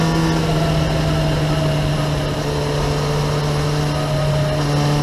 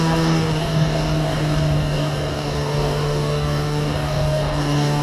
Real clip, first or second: first